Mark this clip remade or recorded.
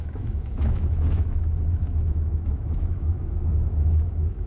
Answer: remade